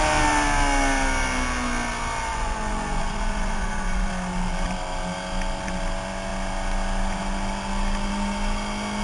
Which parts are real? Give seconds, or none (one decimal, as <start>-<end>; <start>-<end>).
0.0-2.3; 4.1-9.0